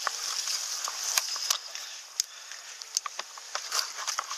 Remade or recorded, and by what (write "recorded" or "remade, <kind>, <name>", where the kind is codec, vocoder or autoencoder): recorded